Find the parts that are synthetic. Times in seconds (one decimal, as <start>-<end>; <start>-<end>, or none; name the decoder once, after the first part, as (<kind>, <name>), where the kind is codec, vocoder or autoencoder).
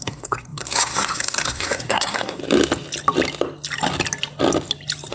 0.0-2.4 (codec, SNAC)